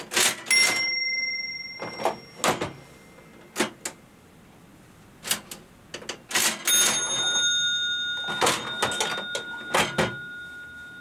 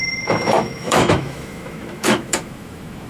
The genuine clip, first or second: first